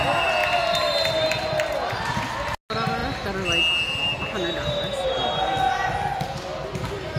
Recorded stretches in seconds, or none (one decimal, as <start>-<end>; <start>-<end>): 0.0-7.2